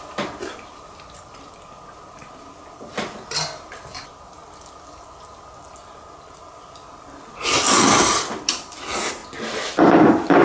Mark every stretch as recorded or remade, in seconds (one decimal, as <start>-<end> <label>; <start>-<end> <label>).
0.0-4.4 remade; 4.4-7.7 recorded; 7.7-9.2 remade; 9.2-9.9 recorded; 9.9-10.4 remade